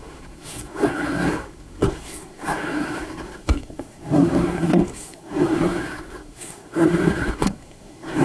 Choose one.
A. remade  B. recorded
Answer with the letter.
A